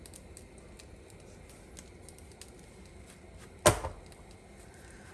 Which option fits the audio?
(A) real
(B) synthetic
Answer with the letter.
A